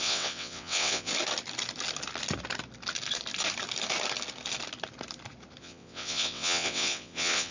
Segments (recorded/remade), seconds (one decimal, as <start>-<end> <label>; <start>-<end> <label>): 0.0-1.1 remade; 1.1-5.6 recorded; 5.6-7.5 remade